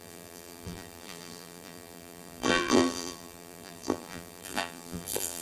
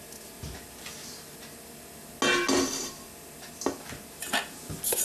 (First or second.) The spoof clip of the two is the first